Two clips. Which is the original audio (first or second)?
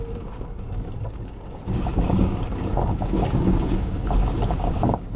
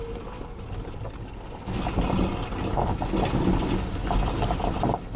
second